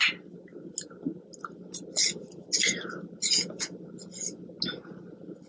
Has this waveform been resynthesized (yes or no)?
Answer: no